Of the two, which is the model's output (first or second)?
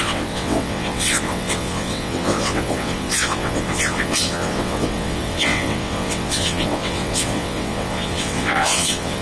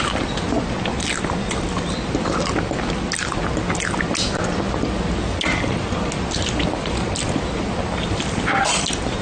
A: first